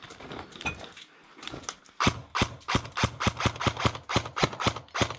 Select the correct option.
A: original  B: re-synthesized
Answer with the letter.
A